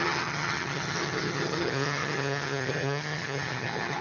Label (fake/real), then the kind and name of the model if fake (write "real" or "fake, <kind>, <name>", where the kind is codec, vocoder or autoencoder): fake, vocoder, HiFi-GAN